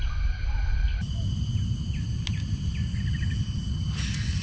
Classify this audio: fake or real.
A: real